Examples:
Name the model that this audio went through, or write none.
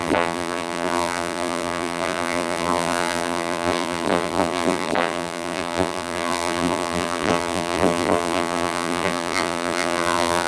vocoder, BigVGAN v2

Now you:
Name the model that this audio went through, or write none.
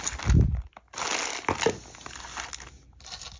none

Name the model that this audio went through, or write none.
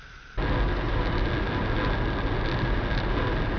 none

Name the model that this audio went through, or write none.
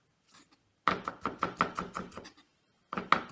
none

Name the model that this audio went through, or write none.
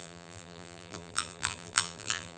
vocoder, BigVGAN v2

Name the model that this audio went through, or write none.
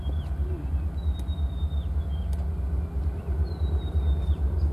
none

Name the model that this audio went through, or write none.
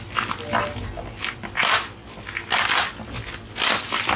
none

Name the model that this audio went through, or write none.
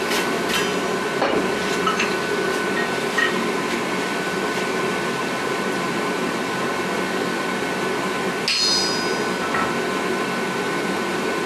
none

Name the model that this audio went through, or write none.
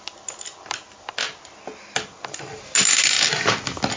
none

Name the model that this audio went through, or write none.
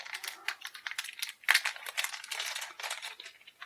vocoder, BigVGAN v2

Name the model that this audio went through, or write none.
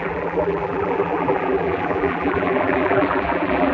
vocoder, BigVGAN v2